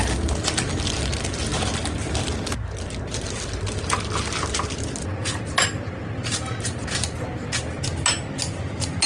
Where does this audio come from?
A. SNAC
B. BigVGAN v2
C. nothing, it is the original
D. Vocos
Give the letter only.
C